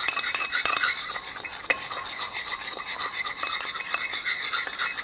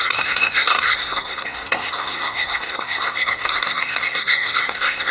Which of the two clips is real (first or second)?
first